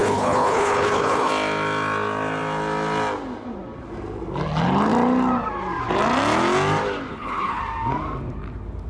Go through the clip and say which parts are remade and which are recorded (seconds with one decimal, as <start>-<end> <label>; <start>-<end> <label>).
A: 0.0-1.3 remade; 1.3-7.1 recorded; 7.1-7.6 remade; 7.6-8.9 recorded